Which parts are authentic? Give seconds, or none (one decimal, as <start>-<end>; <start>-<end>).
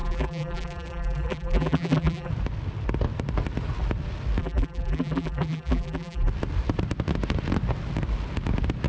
2.3-4.4; 6.3-8.9